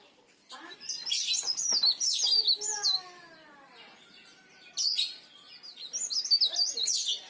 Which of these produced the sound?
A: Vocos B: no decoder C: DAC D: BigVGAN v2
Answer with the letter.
B